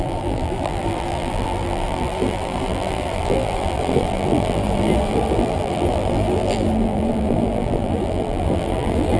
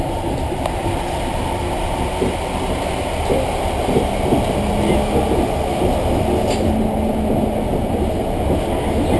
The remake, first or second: first